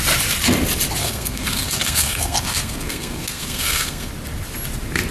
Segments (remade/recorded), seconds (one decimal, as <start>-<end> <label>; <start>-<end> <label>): 0.0-1.0 recorded; 1.0-4.1 remade; 4.1-5.1 recorded